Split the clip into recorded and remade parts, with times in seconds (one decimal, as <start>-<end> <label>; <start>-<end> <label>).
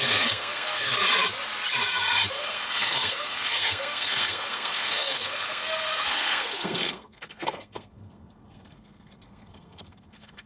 0.0-1.0 remade; 1.0-2.3 recorded; 2.3-10.5 remade